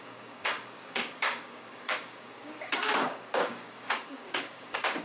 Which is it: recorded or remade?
remade